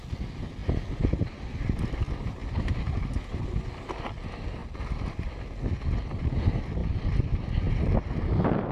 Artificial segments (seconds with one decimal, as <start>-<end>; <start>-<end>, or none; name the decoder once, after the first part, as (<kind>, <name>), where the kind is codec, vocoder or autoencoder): none